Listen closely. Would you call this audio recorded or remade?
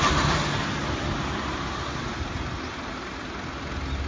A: recorded